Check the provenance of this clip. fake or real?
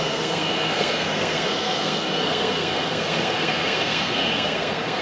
fake